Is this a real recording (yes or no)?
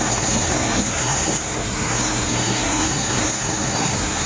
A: no